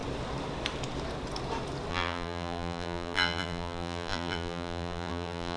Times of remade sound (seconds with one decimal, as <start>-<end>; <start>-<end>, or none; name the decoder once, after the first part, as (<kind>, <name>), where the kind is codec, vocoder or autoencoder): 1.9-5.6 (vocoder, BigVGAN v2)